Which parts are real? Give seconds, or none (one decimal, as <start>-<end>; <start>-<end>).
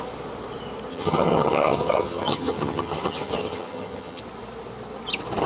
0.0-0.9; 4.2-5.5